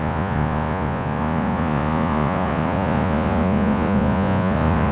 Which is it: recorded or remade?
remade